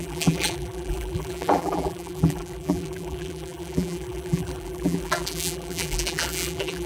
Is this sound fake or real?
fake